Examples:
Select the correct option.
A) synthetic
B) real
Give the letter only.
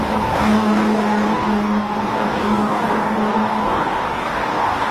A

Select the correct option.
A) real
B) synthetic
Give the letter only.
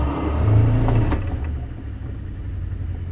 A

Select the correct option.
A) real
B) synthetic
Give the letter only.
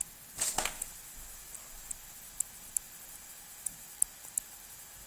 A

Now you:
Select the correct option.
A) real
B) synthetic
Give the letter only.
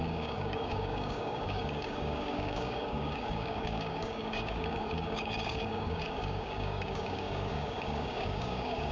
B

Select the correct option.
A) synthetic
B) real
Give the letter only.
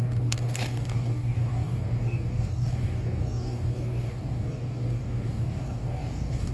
A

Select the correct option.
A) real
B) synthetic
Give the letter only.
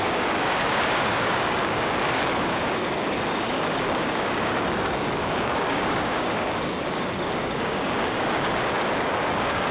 B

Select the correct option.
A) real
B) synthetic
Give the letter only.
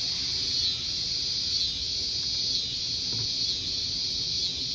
A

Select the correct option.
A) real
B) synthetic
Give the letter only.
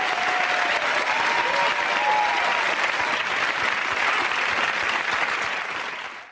A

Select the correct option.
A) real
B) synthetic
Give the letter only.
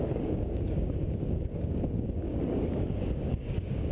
B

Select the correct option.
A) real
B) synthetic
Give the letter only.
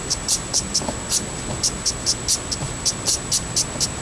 A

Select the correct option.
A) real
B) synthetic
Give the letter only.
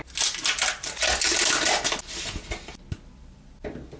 A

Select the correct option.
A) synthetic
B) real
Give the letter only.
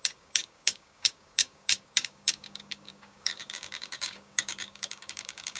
A